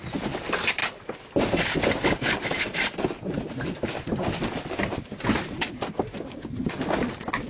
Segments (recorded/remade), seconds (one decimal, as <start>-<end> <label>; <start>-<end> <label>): 0.0-7.5 recorded